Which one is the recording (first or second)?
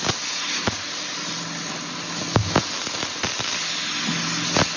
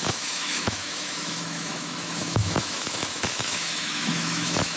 first